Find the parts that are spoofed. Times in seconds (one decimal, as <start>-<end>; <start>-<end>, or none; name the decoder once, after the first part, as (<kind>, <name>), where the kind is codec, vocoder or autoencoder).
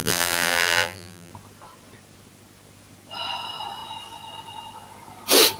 0.0-1.3 (vocoder, BigVGAN v2)